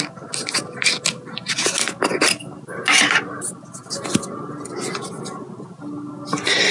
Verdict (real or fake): real